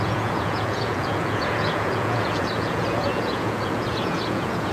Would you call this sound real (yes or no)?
no